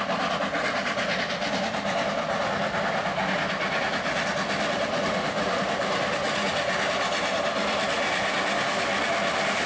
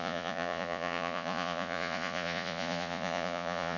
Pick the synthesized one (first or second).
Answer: second